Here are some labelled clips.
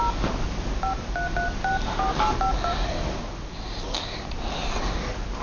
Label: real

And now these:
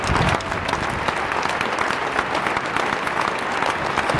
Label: real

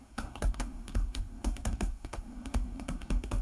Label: fake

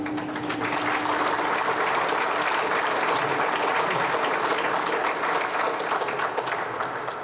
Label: real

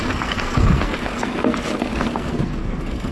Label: fake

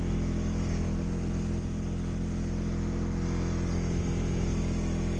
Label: real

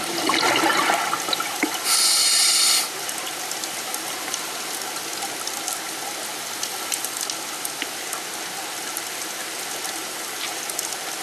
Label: real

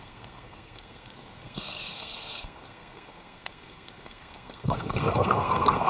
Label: fake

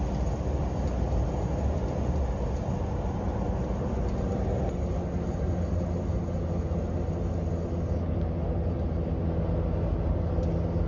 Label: real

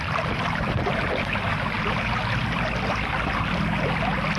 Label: real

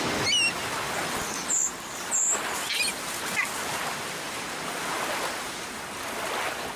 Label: real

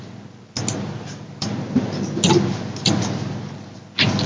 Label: real